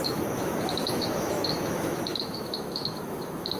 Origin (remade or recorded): remade